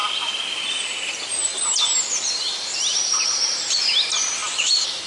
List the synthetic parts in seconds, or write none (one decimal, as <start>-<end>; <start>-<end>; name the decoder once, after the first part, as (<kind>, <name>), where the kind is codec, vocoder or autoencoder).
0.8-1.5 (vocoder, BigVGAN v2); 2.2-5.1